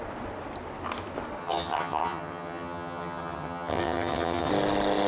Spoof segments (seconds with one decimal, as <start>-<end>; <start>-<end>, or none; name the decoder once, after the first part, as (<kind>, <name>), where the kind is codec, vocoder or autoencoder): 1.4-4.5 (vocoder, HiFi-GAN)